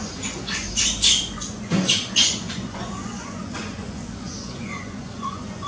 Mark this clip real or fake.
fake